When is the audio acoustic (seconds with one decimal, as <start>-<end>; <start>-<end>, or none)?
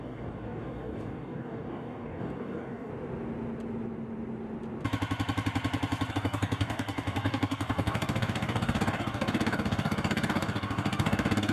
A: 2.9-6.1